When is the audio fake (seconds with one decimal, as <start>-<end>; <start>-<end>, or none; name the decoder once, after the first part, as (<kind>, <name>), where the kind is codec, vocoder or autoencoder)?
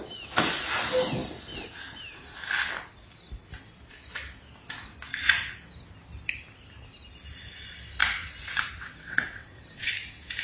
8.0-9.9 (vocoder, WaveNeXt)